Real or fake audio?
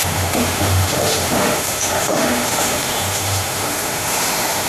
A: fake